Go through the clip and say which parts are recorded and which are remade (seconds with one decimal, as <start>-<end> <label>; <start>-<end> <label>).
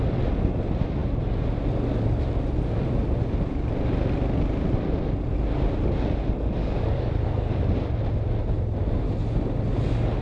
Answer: 0.0-6.6 recorded; 6.6-7.6 remade; 7.6-10.2 recorded